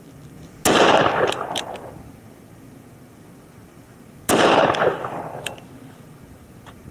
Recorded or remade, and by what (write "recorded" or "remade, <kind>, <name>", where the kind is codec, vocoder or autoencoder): recorded